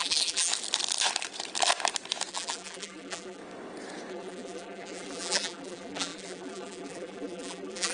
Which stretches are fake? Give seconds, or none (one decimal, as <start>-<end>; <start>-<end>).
0.0-0.5; 2.3-3.4; 4.1-7.9